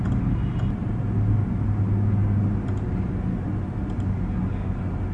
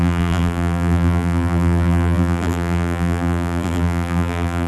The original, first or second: first